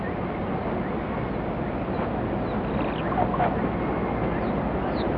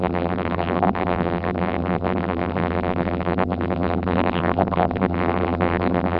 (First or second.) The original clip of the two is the first